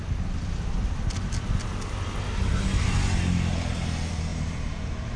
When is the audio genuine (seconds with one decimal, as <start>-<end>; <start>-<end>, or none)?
0.0-5.2